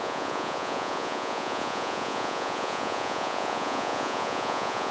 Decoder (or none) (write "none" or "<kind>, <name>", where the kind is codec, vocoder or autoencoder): vocoder, Vocos